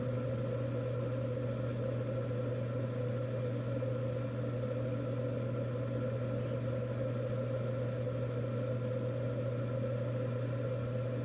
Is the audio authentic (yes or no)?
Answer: yes